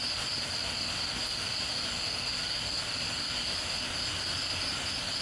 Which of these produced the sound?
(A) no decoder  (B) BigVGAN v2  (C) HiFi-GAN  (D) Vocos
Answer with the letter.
A